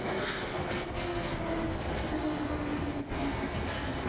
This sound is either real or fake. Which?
fake